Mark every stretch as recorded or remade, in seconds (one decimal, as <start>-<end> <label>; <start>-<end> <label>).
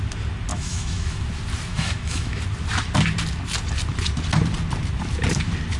0.0-0.5 recorded; 0.5-1.2 remade; 1.2-1.7 recorded; 1.7-2.4 remade; 2.4-5.8 recorded